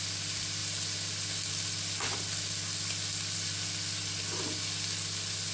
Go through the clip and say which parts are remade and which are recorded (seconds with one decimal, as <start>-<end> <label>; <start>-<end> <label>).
0.0-5.5 recorded